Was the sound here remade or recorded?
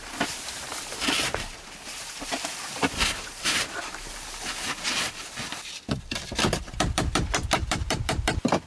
remade